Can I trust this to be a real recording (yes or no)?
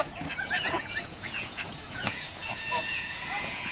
no